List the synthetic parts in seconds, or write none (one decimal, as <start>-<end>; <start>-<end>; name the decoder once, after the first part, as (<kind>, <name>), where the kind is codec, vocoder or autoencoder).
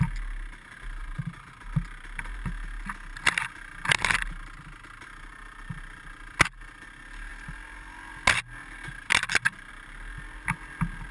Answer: none